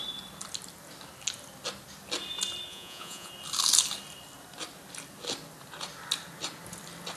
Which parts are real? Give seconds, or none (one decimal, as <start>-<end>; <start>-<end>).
0.0-2.7; 3.3-7.2